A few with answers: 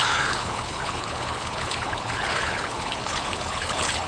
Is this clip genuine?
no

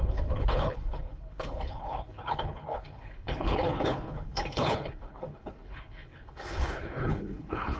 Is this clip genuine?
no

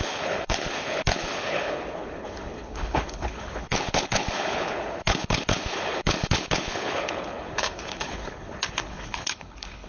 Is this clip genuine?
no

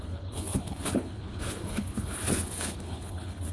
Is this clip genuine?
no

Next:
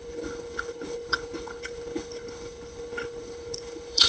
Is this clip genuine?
no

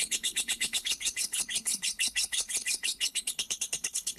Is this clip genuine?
no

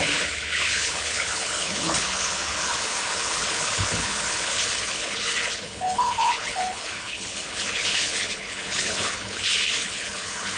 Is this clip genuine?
no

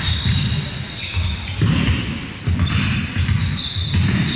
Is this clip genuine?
yes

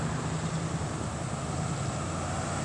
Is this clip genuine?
yes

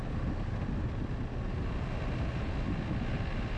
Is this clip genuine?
yes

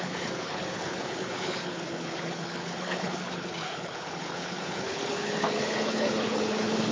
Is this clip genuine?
no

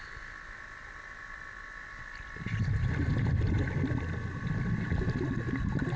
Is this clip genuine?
yes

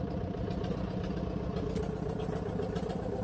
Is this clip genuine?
yes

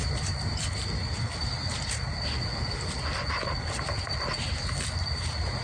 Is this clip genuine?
yes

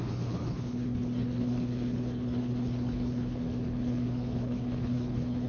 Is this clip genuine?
no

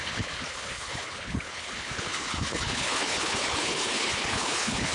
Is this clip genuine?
no